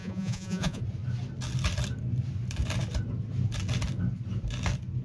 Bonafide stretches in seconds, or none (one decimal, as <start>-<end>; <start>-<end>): 0.8-5.0